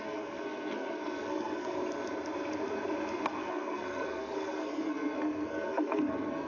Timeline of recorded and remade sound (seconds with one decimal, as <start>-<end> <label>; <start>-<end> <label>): 0.0-1.8 remade; 1.8-3.4 recorded; 3.4-6.5 remade